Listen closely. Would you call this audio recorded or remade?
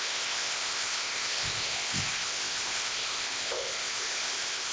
remade